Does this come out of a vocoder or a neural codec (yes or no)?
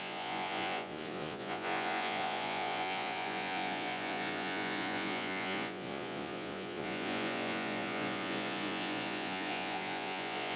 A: yes